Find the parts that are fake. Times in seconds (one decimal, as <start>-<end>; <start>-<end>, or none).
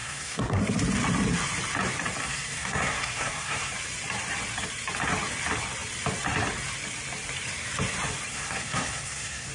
0.0-0.6; 2.2-3.7; 8.3-9.5